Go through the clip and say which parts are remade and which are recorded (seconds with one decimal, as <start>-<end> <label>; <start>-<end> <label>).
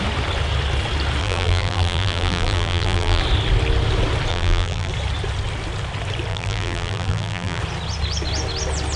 0.0-1.2 recorded; 1.2-3.2 remade; 3.2-4.3 recorded; 4.3-4.9 remade; 4.9-6.3 recorded; 6.3-7.6 remade; 7.6-9.0 recorded